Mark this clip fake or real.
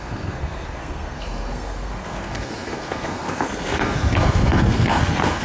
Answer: fake